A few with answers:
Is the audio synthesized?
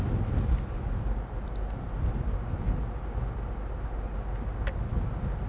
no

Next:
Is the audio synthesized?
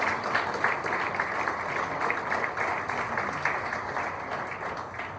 no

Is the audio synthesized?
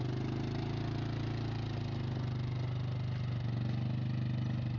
no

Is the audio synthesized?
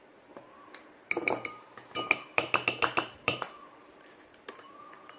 yes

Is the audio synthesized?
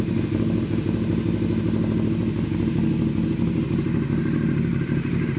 no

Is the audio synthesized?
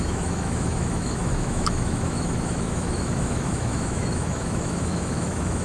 yes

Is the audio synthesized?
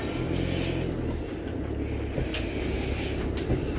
no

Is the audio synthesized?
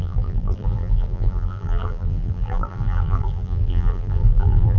yes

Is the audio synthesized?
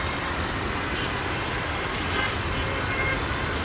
yes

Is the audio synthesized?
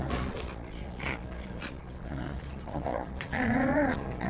yes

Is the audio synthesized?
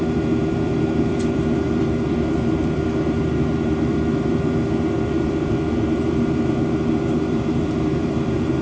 yes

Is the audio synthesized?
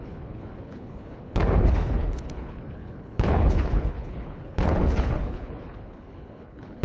yes